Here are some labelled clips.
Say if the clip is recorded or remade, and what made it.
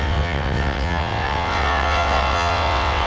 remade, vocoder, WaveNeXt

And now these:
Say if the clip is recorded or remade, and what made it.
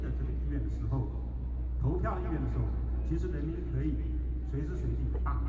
recorded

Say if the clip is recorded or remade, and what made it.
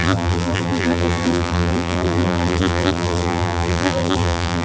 remade, vocoder, BigVGAN v2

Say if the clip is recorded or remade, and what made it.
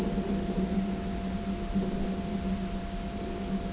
recorded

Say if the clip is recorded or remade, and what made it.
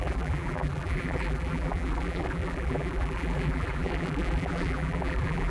remade, vocoder, BigVGAN v2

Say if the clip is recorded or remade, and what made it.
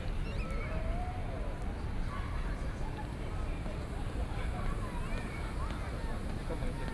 recorded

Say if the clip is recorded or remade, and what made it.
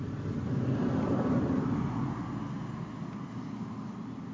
recorded